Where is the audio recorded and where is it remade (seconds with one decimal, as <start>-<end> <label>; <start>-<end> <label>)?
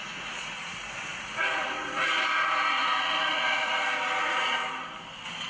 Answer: 0.0-4.6 remade; 4.6-5.5 recorded